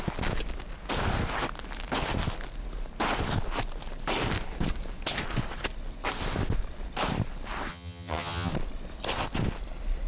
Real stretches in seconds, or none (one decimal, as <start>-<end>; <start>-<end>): 0.0-7.7; 8.5-10.1